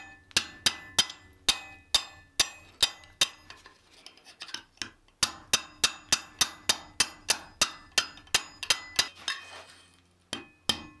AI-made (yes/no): no